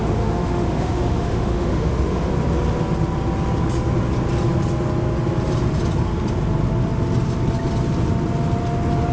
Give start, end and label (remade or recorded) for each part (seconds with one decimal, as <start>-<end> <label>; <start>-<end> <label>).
0.0-2.3 remade; 2.3-9.1 recorded

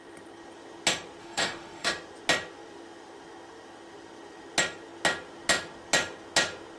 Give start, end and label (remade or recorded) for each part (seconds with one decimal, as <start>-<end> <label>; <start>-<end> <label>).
0.0-1.2 recorded; 1.2-1.9 remade; 1.9-6.8 recorded

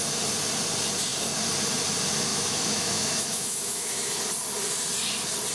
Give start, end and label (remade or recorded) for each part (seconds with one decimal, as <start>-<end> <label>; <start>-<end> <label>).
0.0-2.3 recorded; 2.3-4.2 remade; 4.2-5.5 recorded